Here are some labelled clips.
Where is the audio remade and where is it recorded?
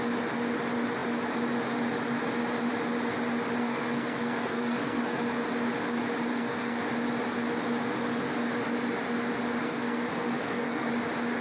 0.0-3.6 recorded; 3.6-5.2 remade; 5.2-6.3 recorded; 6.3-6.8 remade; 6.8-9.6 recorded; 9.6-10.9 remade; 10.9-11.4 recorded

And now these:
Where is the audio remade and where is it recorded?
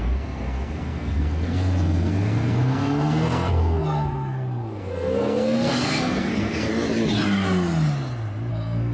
0.0-6.7 remade; 6.7-8.5 recorded; 8.5-8.9 remade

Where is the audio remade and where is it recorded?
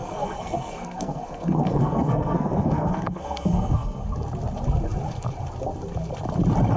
0.0-4.0 remade; 4.0-6.8 recorded